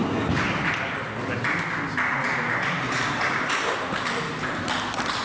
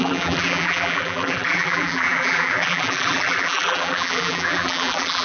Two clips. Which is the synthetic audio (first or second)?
second